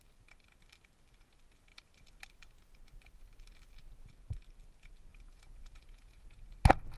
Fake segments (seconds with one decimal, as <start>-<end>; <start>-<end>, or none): 5.1-6.4